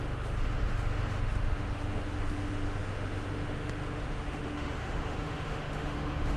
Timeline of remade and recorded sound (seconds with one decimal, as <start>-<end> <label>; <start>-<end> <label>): 0.0-6.4 remade